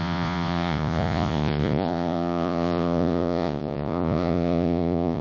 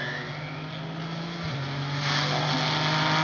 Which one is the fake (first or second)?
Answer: first